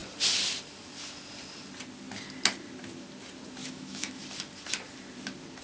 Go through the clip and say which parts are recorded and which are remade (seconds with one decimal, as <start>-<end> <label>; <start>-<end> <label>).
0.0-3.6 recorded; 3.6-4.2 remade; 4.2-5.6 recorded